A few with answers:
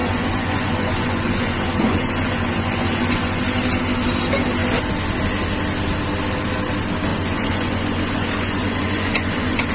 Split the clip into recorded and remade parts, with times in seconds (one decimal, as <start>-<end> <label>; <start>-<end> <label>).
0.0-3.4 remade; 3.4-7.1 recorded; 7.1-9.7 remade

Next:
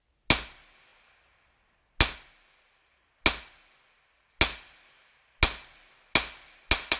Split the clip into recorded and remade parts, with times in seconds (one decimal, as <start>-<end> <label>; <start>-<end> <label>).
0.0-7.0 recorded

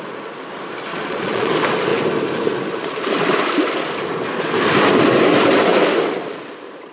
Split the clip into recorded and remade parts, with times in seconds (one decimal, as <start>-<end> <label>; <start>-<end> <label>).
0.0-0.9 recorded; 0.9-1.5 remade; 1.5-6.9 recorded